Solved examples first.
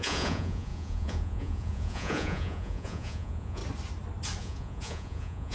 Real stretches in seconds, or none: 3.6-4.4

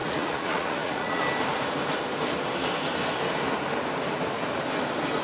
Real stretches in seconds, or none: 1.2-5.2

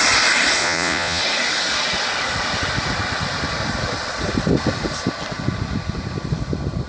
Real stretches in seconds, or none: 0.0-0.6; 1.2-6.9

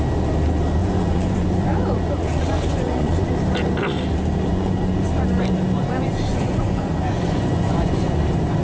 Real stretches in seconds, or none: 0.0-0.8; 3.3-4.5; 5.1-6.3; 8.2-8.6

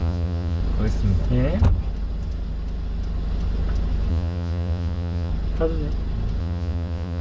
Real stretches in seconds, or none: 0.6-4.1; 5.3-6.4

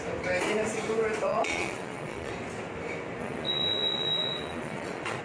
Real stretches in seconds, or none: 0.0-1.3; 2.3-3.2

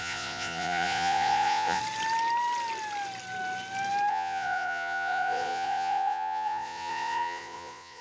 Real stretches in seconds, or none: 1.8-4.1

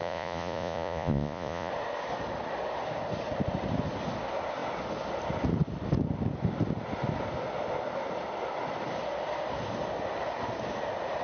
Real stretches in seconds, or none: 1.7-11.2